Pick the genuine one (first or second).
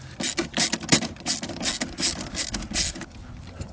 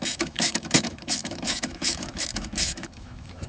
first